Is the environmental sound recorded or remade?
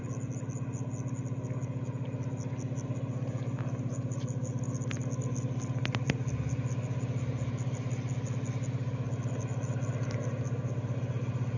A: recorded